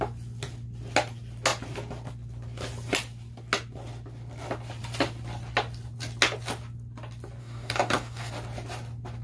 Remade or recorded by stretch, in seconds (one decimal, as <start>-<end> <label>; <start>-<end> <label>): 0.0-7.4 recorded; 7.4-8.3 remade; 8.3-9.2 recorded